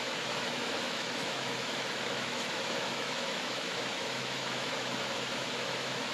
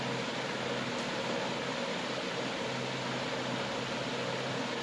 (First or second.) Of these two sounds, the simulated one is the first